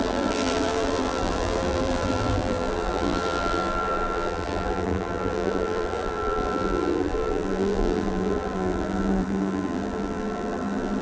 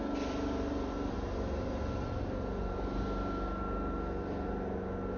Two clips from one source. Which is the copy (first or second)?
first